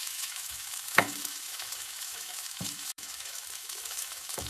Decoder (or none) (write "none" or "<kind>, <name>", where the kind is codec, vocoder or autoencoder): autoencoder, DAC-VAE